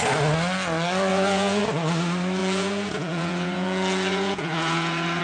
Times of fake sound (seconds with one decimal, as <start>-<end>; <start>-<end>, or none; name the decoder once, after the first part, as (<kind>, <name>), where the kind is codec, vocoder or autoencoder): 1.1-1.6 (vocoder, Vocos); 2.4-5.2